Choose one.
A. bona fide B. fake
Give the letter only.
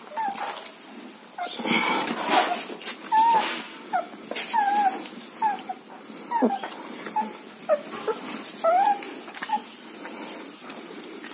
A